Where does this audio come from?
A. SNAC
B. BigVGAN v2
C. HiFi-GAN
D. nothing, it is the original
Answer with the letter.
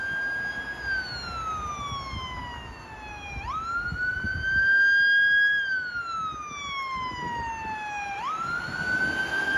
D